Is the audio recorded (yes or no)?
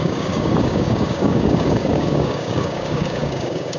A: no